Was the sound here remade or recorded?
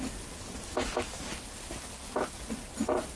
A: recorded